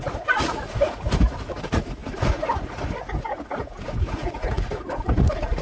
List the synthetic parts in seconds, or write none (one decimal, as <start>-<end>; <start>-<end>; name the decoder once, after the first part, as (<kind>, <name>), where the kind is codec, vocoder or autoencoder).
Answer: 0.0-5.6 (vocoder, Vocos)